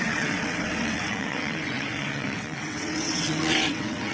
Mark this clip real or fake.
fake